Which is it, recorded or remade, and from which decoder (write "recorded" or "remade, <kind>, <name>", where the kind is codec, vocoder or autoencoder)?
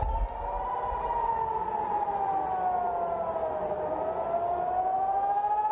recorded